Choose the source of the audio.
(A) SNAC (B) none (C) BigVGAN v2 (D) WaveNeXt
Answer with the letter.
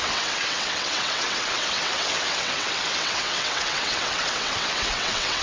D